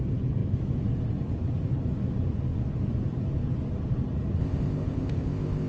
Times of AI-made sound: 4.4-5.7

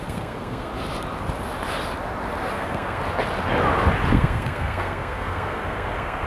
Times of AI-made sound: 0.0-0.7; 2.5-3.0; 4.1-6.3

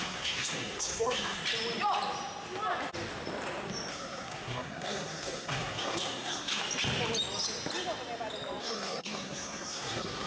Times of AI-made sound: 0.0-1.4; 3.9-6.6; 8.6-10.3

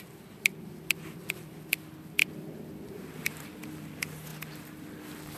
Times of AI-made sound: 2.2-3.8; 4.3-5.4

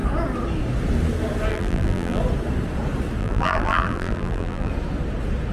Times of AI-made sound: 1.5-2.2; 3.2-4.7